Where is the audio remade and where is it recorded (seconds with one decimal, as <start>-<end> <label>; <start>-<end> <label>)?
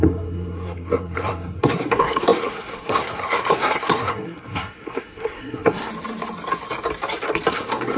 0.0-5.9 remade; 5.9-7.5 recorded; 7.5-8.0 remade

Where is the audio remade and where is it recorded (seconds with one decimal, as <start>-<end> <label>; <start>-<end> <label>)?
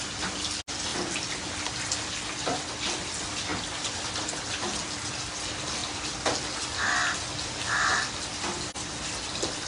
0.0-3.5 recorded; 3.5-4.3 remade; 4.3-9.7 recorded